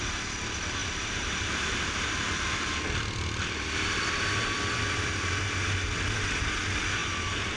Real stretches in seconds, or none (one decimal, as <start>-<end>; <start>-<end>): 0.0-0.8; 5.4-7.6